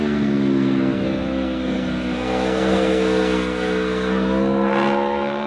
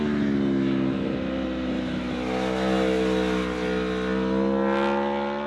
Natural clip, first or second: second